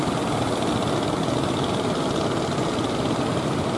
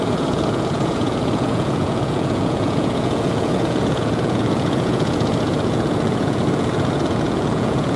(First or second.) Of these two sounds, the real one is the first